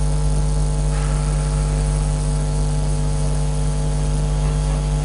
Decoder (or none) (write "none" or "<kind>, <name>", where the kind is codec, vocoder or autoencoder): none